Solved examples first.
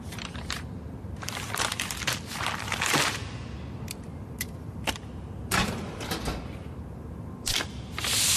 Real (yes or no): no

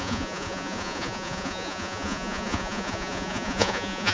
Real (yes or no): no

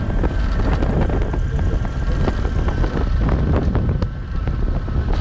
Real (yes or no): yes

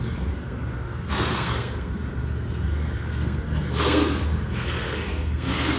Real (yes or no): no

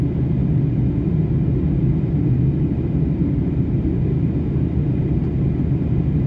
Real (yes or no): yes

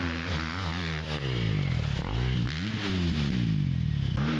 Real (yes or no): yes